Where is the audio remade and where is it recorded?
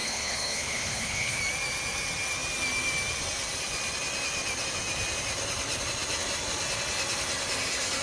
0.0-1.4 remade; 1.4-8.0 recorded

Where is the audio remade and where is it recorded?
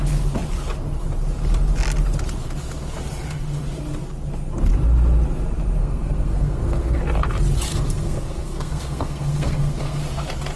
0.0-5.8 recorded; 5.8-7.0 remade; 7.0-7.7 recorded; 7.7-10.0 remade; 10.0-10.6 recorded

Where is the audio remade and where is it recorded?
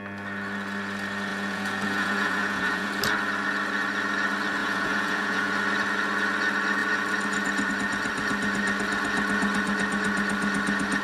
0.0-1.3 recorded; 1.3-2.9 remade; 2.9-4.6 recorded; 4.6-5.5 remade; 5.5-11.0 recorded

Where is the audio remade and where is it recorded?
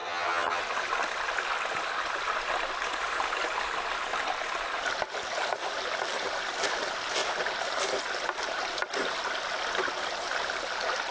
0.0-0.6 remade; 0.6-11.1 recorded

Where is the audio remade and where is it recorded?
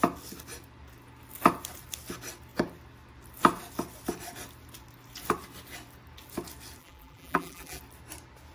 0.0-6.8 recorded; 6.8-7.8 remade; 7.8-8.5 recorded